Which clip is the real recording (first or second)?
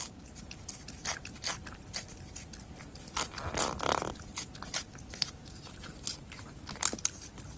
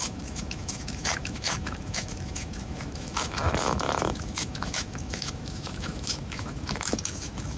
first